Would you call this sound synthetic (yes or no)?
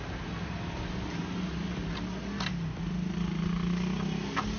no